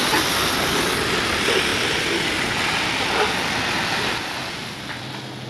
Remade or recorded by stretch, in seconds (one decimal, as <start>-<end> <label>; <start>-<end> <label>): 0.0-5.5 recorded